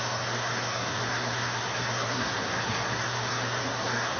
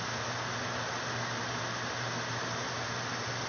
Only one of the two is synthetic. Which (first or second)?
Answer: first